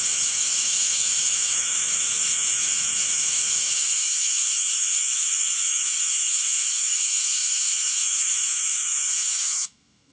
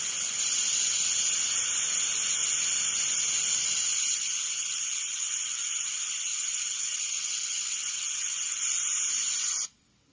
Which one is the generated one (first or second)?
first